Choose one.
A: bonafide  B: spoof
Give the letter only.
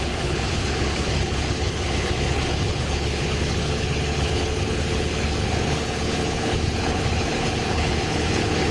B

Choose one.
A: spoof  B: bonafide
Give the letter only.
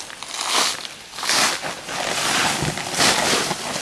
B